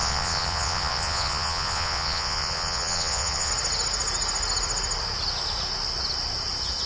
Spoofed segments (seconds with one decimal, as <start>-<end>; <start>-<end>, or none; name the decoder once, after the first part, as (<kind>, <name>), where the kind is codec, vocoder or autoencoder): 0.0-3.5 (vocoder, Vocos)